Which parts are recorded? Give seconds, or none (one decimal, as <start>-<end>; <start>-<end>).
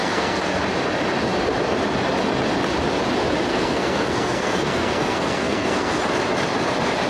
0.6-3.5; 6.0-7.1